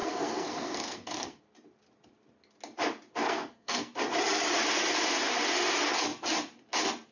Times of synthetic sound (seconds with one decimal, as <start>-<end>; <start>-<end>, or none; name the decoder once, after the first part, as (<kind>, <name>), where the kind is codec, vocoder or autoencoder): 0.0-1.4 (codec, SNAC); 3.2-3.9